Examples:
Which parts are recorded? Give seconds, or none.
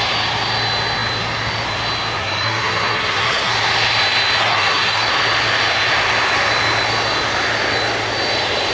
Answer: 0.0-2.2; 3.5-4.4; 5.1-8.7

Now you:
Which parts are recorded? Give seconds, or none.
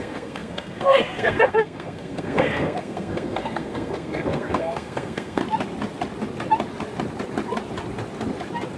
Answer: 5.4-8.8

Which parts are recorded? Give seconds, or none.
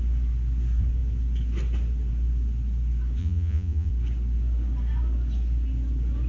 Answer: 0.0-3.2; 3.9-6.3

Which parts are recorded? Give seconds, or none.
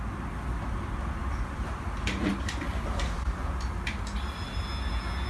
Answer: 0.0-1.2; 3.4-5.3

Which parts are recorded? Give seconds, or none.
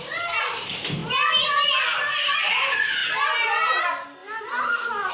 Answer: 0.0-4.2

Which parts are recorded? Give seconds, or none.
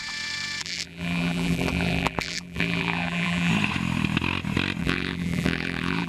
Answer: 0.0-0.6; 3.5-4.8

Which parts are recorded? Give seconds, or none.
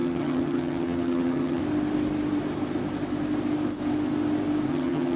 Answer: 1.6-4.7